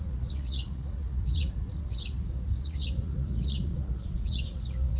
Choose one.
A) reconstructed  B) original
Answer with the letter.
A